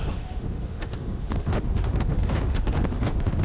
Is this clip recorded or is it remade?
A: remade